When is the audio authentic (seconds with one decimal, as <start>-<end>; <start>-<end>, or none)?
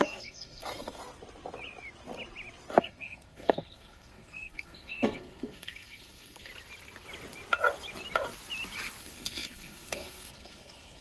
1.0-2.8; 6.5-9.0